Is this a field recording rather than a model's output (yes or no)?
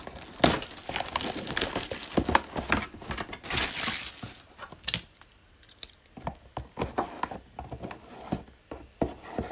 yes